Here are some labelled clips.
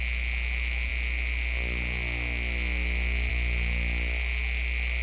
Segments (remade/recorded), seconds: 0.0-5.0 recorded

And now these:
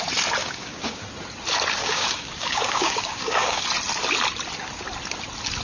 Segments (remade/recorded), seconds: 0.0-0.4 recorded; 0.4-1.0 remade; 1.0-1.8 recorded; 1.8-3.6 remade; 3.6-5.6 recorded